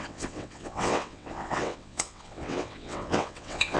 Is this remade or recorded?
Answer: remade